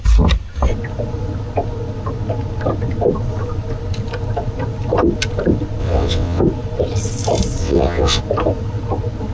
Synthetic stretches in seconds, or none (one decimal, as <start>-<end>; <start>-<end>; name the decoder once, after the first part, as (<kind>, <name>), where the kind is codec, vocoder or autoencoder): 5.8-6.4 (vocoder, WaveNeXt); 7.6-8.2